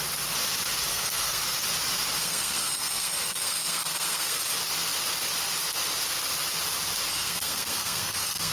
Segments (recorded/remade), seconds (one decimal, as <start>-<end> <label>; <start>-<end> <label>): 0.0-0.9 recorded; 0.9-1.4 remade; 1.4-2.2 recorded; 2.2-4.4 remade; 4.4-7.1 recorded; 7.1-8.5 remade